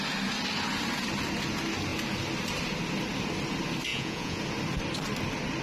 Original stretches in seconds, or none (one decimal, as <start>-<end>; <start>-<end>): 0.0-3.9; 4.4-5.6